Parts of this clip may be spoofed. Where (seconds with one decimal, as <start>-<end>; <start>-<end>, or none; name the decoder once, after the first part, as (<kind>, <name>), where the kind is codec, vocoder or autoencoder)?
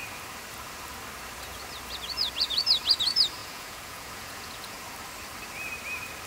3.4-4.8 (vocoder, Vocos)